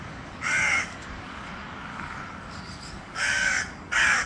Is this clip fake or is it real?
fake